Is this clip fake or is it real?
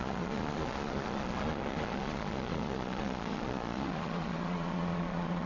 fake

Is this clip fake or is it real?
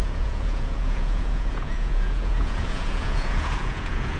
fake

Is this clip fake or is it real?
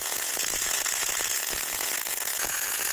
fake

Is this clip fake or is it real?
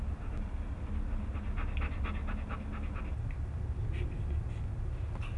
real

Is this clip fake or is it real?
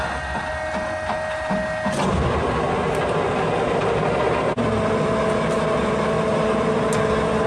real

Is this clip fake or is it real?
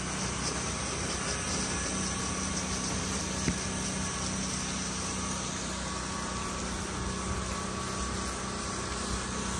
real